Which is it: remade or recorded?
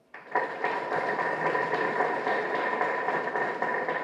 recorded